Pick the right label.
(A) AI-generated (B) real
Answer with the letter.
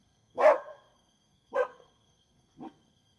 A